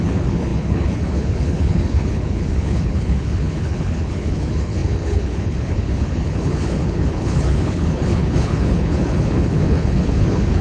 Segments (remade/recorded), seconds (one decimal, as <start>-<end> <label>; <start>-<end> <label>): 0.0-10.6 remade